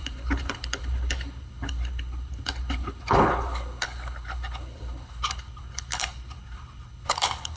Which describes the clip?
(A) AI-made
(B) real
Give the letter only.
A